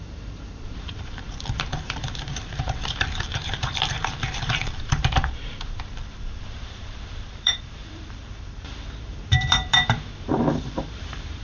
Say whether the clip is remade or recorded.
remade